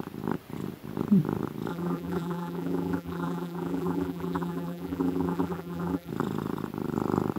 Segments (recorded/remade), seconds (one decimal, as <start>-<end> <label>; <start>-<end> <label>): 0.0-1.7 recorded; 1.7-6.1 remade; 6.1-7.4 recorded